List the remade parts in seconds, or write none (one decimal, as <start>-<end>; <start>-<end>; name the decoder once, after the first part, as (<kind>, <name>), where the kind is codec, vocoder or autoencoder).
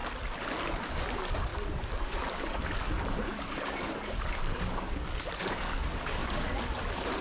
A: 0.9-7.2 (codec, DAC)